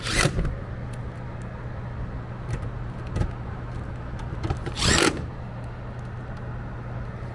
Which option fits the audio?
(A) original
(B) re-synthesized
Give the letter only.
A